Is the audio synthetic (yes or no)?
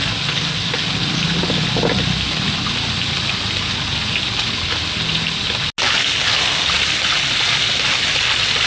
no